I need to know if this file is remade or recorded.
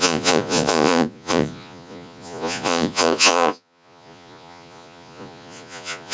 remade